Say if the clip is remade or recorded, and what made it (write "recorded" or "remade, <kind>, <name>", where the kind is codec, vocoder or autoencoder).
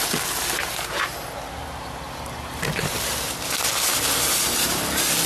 recorded